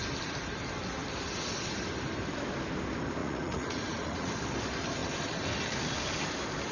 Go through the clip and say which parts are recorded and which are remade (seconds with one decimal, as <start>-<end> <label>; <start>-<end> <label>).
0.0-3.2 recorded; 3.2-4.3 remade; 4.3-6.7 recorded